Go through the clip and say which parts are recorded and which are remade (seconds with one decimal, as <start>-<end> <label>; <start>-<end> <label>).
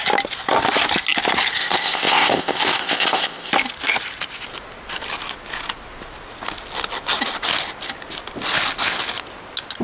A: 0.0-1.6 recorded; 1.6-3.5 remade; 3.5-9.8 recorded